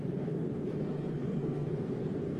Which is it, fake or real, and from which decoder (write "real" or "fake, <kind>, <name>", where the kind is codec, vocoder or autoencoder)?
fake, codec, SNAC